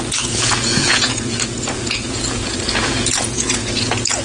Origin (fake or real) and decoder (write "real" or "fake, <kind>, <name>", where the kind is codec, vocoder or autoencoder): fake, vocoder, Vocos